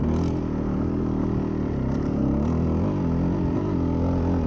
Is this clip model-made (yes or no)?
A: no